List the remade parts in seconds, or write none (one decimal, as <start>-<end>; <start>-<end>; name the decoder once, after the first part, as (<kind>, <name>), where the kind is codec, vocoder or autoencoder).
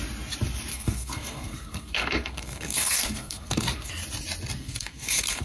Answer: 0.7-3.9 (codec, SNAC); 4.6-5.4